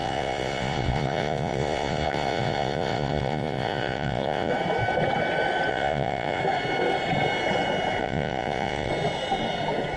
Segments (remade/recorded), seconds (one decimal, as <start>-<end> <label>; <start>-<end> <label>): 0.0-4.5 remade; 4.5-5.7 recorded; 5.7-6.4 remade; 6.4-8.0 recorded; 8.0-8.9 remade; 8.9-10.0 recorded

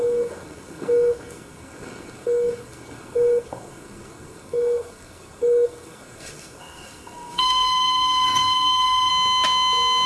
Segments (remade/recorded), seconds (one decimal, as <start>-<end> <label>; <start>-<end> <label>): 0.0-9.1 remade; 9.1-10.1 recorded

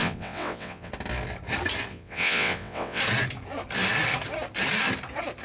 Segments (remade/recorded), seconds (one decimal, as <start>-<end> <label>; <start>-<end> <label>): 0.0-0.9 remade; 0.9-1.9 recorded; 1.9-3.0 remade; 3.0-5.4 recorded

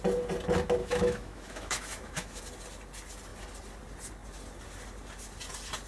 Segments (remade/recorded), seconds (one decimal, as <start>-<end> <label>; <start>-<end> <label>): 0.0-0.8 recorded; 0.8-2.4 remade; 2.4-5.9 recorded

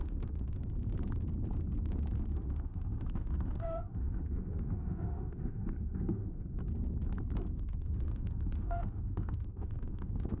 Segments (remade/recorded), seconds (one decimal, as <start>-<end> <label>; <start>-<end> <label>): 0.0-0.6 remade; 0.6-2.3 recorded; 2.3-6.6 remade; 6.6-7.5 recorded; 7.5-10.4 remade

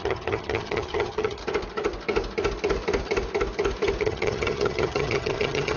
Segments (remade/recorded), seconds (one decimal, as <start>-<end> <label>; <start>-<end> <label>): 0.0-1.4 remade; 1.4-4.0 recorded; 4.0-5.8 remade